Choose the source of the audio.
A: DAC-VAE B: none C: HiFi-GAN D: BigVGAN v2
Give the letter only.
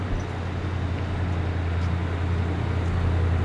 B